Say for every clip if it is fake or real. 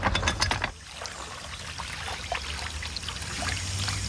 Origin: real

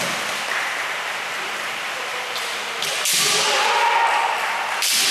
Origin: real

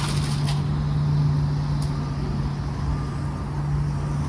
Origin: real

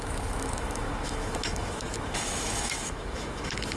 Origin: fake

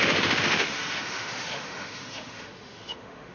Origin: fake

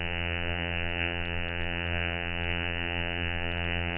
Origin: fake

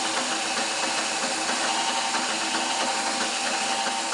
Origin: real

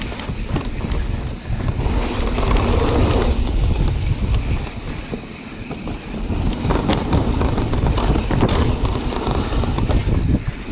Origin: fake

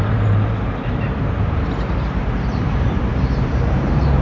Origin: fake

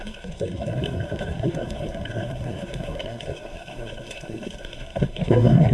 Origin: fake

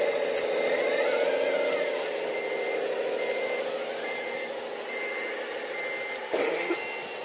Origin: real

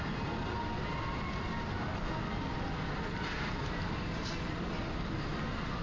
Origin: real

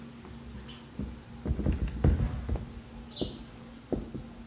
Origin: real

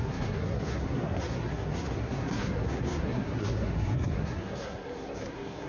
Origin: fake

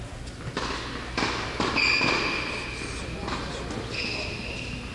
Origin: real